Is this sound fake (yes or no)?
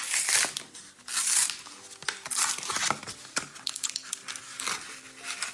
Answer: no